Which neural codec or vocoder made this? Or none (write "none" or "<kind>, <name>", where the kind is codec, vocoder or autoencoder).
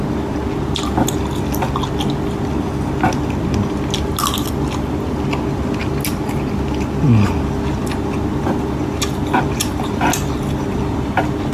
none